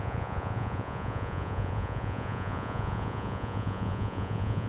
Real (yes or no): no